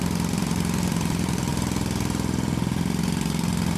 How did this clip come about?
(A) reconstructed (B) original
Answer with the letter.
A